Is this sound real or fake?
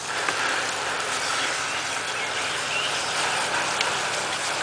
real